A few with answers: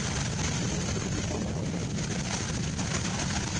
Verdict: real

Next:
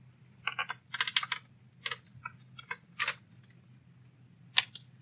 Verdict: real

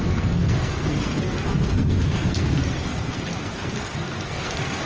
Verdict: fake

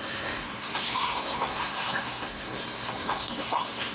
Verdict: fake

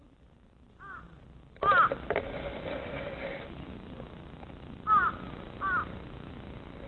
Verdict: real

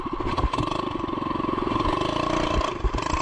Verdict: real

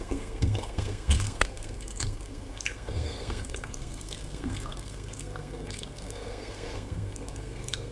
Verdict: fake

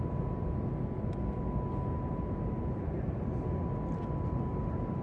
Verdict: real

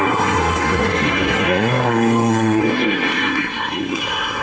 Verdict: fake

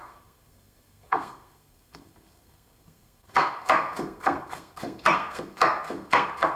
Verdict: fake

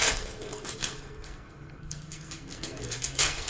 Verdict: fake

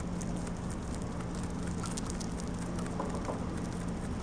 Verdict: real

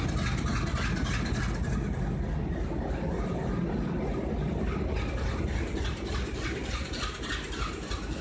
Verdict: real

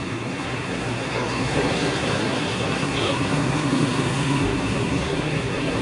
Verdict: fake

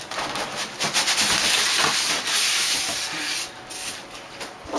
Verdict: real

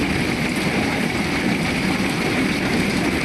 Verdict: real